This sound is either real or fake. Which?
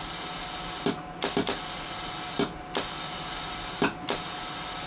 real